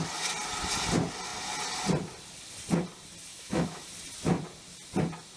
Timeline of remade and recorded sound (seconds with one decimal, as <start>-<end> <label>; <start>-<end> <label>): 0.0-3.3 recorded; 3.3-3.9 remade; 3.9-5.4 recorded